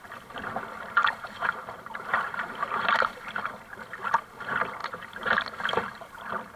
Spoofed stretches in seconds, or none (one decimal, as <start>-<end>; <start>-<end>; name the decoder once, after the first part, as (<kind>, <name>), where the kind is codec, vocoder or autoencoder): 1.0-3.4 (vocoder, BigVGAN v2); 4.8-5.4